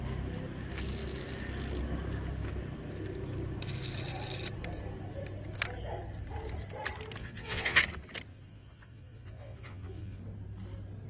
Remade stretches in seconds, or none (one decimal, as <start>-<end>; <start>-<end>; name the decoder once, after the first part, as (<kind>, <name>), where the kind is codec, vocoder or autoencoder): 7.2-7.8 (vocoder, Vocos); 8.3-10.2